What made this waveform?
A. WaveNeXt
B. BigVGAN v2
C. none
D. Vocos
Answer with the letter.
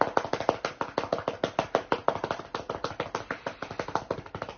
C